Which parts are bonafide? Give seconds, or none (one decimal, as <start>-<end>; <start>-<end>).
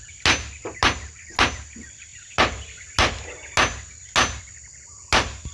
0.0-5.5